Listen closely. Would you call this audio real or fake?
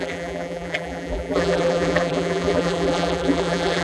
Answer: fake